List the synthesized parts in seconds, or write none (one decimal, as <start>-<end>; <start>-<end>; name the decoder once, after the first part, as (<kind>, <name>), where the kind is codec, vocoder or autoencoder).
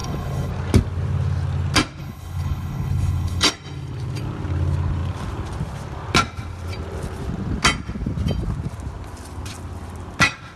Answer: 0.0-0.5 (codec, HILCodec); 2.0-3.5